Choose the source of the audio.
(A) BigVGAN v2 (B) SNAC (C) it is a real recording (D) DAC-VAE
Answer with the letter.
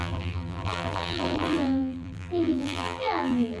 A